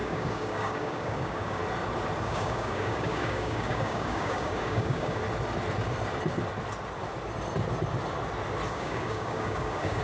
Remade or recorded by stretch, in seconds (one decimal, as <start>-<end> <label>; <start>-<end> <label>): 0.0-1.6 remade; 1.6-2.2 recorded; 2.2-5.2 remade; 5.2-8.7 recorded; 8.7-10.0 remade